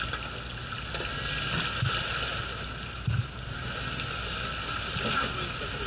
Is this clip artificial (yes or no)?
no